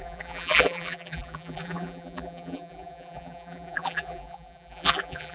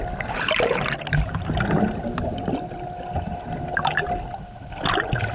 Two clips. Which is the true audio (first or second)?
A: second